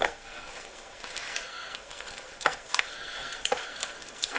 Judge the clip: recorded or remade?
remade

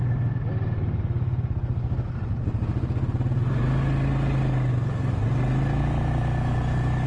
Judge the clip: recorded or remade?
recorded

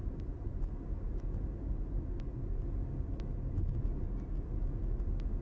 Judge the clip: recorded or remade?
recorded